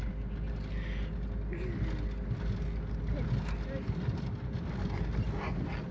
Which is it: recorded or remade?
recorded